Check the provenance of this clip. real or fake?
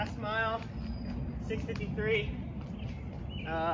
real